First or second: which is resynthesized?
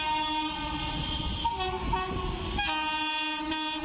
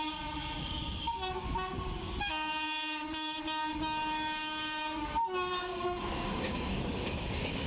second